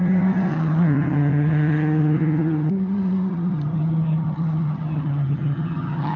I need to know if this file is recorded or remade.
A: remade